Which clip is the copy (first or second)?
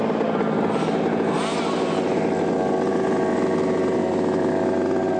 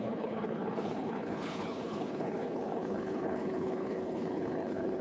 second